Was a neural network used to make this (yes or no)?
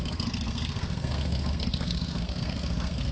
yes